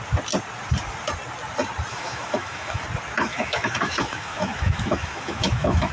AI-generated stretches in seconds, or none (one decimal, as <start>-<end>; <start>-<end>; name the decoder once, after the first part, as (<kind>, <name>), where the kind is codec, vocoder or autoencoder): 1.9-2.8 (autoencoder, DAC-VAE); 3.3-5.9